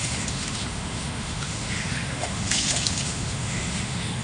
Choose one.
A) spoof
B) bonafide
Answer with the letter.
A